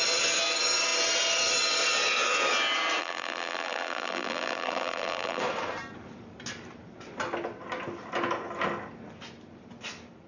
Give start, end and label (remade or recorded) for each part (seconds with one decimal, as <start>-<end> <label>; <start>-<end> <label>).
0.0-3.0 recorded; 3.0-5.4 remade; 5.4-10.3 recorded